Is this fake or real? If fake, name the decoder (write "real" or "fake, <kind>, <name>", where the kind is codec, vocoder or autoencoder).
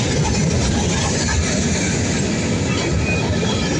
real